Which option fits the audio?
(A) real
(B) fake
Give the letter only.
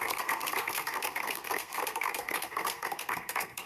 B